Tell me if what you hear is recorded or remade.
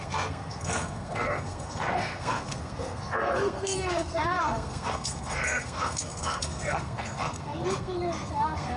remade